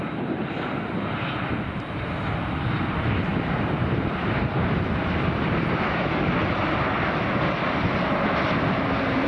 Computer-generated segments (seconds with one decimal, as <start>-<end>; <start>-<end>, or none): none